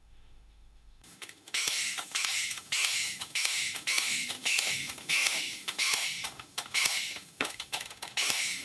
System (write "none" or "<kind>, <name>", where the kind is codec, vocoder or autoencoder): autoencoder, DAC-VAE